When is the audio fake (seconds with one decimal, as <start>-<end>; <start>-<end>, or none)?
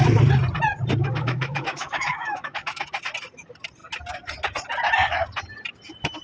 1.0-2.8